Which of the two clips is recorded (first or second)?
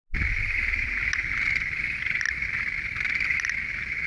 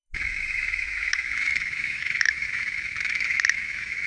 first